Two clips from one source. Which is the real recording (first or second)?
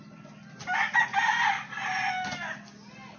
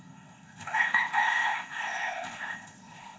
first